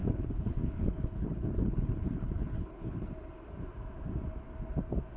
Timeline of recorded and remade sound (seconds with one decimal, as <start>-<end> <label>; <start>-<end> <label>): 0.0-3.1 remade; 3.1-5.2 recorded